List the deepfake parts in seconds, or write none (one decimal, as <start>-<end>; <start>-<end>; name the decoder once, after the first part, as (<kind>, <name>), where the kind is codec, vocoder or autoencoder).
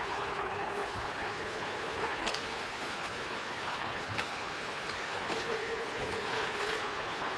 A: 0.0-7.4 (codec, HILCodec)